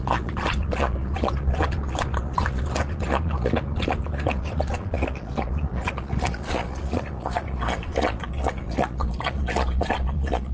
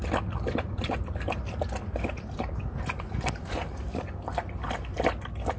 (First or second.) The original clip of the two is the second